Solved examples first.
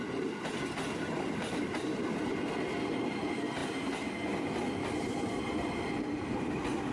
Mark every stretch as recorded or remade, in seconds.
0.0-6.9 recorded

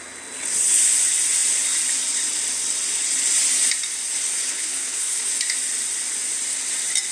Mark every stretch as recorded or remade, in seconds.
0.0-4.5 recorded; 4.5-5.3 remade; 5.3-7.1 recorded

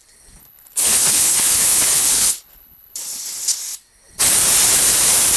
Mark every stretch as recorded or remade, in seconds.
0.0-0.4 recorded; 0.4-3.6 remade; 3.6-5.4 recorded

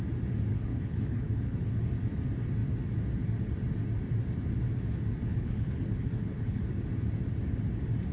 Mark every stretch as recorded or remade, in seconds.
0.0-0.5 recorded; 0.5-1.8 remade; 1.8-5.3 recorded; 5.3-6.6 remade; 6.6-8.1 recorded

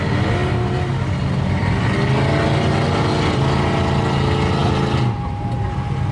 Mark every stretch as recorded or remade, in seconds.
0.0-6.1 recorded